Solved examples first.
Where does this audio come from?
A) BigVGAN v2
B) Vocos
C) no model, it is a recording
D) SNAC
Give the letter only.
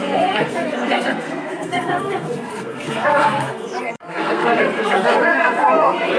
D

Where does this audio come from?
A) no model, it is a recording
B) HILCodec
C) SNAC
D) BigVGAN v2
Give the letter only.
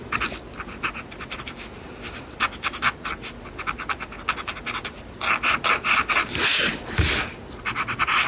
A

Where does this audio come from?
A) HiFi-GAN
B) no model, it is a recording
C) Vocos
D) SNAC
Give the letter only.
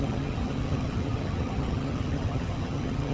A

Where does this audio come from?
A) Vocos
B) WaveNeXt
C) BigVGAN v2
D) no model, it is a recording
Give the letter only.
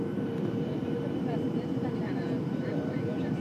C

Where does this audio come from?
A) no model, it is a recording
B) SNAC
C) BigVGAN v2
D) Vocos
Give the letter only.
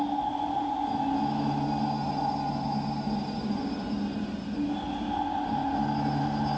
A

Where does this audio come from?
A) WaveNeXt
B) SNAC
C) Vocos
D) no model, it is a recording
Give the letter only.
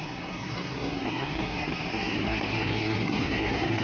B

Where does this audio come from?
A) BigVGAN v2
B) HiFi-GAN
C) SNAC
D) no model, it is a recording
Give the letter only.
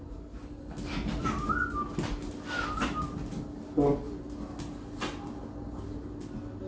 D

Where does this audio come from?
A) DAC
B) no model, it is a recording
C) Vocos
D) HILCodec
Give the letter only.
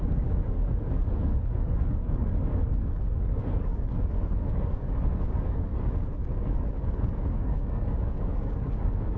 A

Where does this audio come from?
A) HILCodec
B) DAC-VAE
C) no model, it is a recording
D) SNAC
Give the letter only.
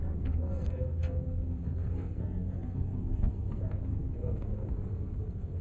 D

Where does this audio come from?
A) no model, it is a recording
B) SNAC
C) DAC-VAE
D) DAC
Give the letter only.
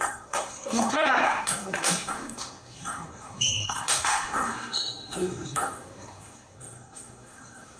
B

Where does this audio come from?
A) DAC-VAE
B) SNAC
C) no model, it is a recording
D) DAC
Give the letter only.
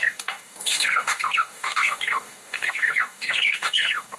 D